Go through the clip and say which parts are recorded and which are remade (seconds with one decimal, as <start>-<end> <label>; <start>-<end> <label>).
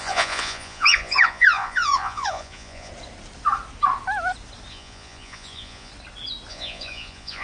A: 0.0-2.9 remade; 2.9-4.7 recorded; 4.7-5.9 remade; 5.9-6.5 recorded; 6.5-7.4 remade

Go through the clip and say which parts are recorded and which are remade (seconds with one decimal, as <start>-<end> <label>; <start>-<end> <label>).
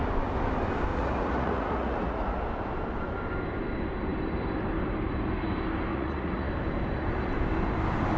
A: 0.0-0.9 recorded; 0.9-2.4 remade; 2.4-5.9 recorded; 5.9-6.5 remade; 6.5-8.2 recorded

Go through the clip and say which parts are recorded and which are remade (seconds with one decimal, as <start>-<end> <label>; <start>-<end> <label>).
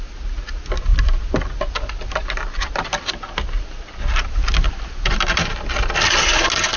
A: 0.0-6.8 recorded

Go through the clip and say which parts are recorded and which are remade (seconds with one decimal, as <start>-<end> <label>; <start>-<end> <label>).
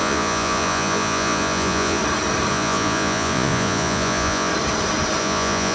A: 0.0-2.0 remade; 2.0-2.5 recorded; 2.5-4.5 remade; 4.5-5.2 recorded; 5.2-5.7 remade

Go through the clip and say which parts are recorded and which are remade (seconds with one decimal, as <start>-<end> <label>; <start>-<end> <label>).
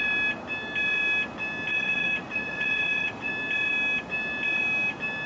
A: 0.0-1.7 recorded; 1.7-3.3 remade; 3.3-5.3 recorded